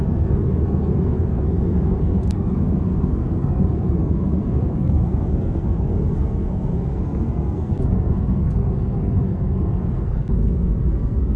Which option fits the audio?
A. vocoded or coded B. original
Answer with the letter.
A